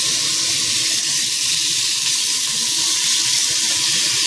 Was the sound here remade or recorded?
recorded